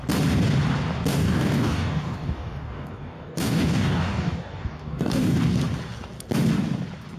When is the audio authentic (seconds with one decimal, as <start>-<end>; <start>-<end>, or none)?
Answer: 0.0-1.1; 5.4-7.2